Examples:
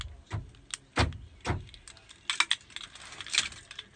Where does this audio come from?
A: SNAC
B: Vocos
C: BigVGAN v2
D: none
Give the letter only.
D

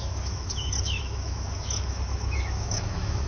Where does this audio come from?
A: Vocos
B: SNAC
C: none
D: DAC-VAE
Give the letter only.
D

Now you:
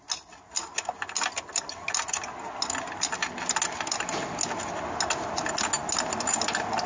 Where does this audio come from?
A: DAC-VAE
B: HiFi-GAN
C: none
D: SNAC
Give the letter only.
C